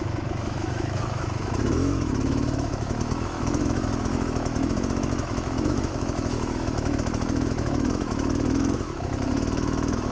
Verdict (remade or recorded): remade